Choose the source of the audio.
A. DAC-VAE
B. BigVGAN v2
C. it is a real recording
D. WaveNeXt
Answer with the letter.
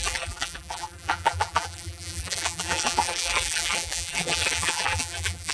B